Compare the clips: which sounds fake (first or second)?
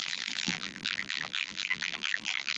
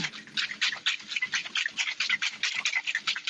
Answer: first